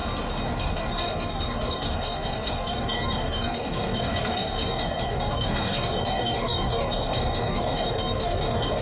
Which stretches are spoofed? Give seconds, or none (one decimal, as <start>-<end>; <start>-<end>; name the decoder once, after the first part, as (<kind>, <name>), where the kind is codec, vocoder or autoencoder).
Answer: 0.6-8.8 (codec, DAC)